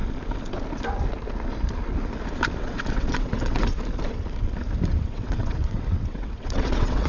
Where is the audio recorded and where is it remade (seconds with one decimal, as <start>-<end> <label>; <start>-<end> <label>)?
0.0-2.6 recorded; 2.6-3.6 remade; 3.6-4.9 recorded; 4.9-7.1 remade